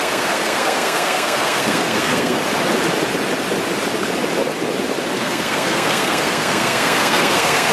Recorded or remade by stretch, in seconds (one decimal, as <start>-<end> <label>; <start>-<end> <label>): 0.0-2.4 remade; 2.4-5.2 recorded; 5.2-7.7 remade